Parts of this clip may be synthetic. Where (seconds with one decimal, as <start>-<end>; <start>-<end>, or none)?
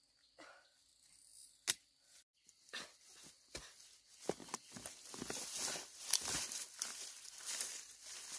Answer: none